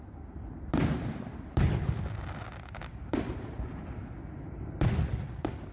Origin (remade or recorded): recorded